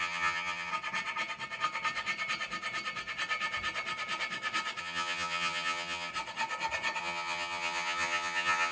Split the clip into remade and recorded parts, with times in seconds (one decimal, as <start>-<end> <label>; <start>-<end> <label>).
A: 0.0-0.7 remade; 0.7-4.8 recorded; 4.8-6.1 remade; 6.1-7.0 recorded; 7.0-8.7 remade